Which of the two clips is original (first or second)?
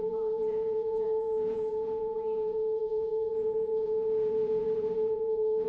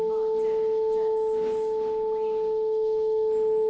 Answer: second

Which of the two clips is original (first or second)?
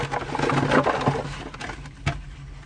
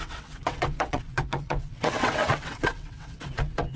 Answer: first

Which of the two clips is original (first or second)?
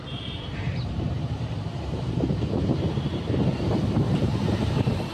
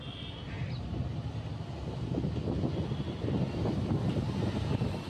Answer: second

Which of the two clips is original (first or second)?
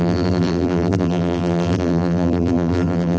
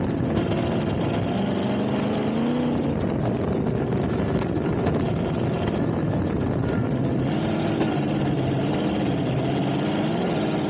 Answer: second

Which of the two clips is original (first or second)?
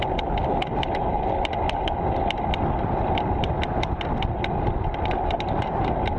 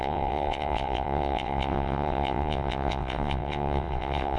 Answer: first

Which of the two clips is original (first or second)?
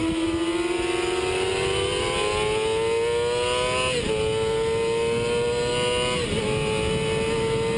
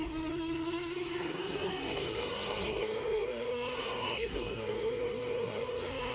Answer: first